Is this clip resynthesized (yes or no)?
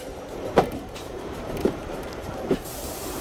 yes